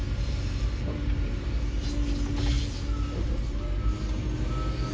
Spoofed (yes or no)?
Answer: no